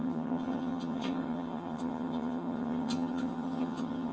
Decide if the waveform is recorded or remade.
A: remade